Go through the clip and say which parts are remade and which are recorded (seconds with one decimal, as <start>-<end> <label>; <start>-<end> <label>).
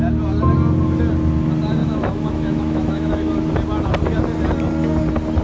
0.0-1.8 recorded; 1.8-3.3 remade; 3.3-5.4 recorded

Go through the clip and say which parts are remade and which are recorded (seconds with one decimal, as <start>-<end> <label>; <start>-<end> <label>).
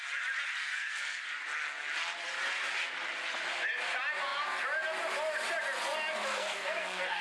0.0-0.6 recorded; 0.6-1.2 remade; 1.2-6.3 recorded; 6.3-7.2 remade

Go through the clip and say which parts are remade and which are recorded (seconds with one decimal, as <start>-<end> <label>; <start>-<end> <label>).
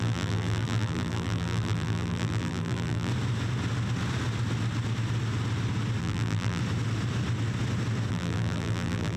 0.0-3.1 remade; 3.1-6.0 recorded; 6.0-6.6 remade; 6.6-8.1 recorded; 8.1-9.2 remade